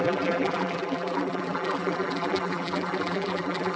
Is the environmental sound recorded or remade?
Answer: remade